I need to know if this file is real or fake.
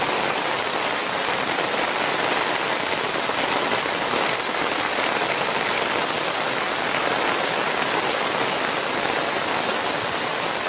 real